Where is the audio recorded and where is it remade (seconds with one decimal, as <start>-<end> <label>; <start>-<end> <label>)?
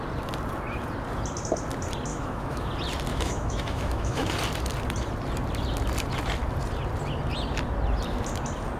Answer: 0.0-2.1 recorded; 2.1-2.7 remade; 2.7-3.1 recorded; 3.1-4.3 remade; 4.3-8.8 recorded